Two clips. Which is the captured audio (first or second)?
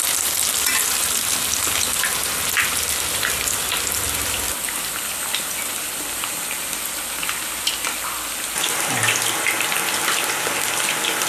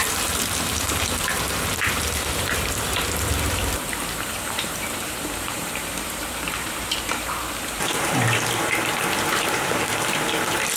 first